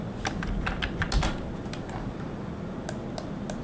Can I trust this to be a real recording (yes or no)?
yes